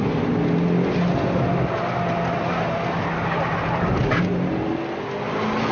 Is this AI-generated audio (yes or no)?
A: no